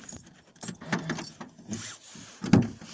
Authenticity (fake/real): real